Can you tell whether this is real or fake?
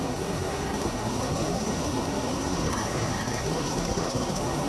fake